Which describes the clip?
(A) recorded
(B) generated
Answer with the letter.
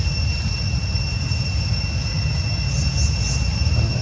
A